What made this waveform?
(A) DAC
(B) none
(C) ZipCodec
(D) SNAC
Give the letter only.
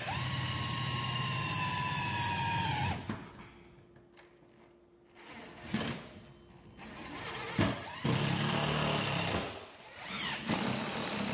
B